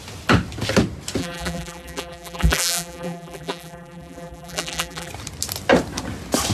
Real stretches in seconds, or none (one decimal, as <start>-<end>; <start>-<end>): 0.0-1.2; 5.1-6.5